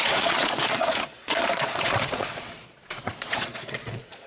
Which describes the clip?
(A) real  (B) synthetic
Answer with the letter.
B